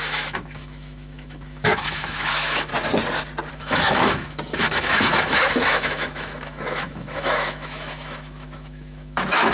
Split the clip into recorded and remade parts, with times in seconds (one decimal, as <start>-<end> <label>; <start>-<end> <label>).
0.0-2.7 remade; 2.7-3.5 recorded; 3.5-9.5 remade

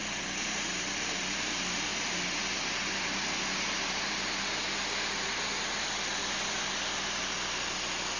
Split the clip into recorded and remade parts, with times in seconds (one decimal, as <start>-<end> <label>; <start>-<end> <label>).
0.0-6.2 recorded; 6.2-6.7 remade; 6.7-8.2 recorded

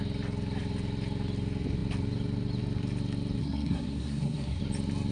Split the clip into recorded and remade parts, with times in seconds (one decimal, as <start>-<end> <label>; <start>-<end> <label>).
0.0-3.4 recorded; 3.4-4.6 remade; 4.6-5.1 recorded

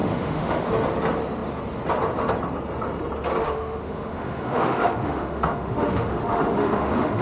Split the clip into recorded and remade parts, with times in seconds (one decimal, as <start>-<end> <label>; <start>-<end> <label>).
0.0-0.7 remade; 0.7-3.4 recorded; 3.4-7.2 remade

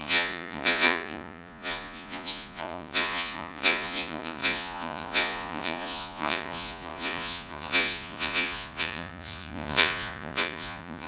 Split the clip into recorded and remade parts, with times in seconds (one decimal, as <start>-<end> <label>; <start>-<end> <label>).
0.0-11.1 remade

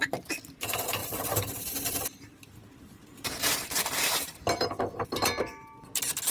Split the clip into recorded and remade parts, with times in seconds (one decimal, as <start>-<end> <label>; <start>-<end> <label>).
0.0-1.0 recorded; 1.0-1.6 remade; 1.6-2.6 recorded; 2.6-5.2 remade; 5.2-6.3 recorded

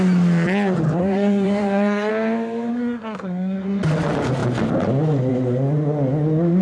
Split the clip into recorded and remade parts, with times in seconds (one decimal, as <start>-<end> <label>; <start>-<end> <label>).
0.0-1.0 recorded; 1.0-2.1 remade; 2.1-2.7 recorded; 2.7-3.8 remade; 3.8-6.6 recorded

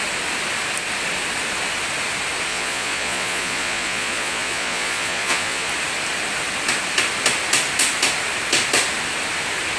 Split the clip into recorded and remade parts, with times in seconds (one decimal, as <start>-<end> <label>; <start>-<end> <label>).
0.0-2.5 recorded; 2.5-5.7 remade; 5.7-9.8 recorded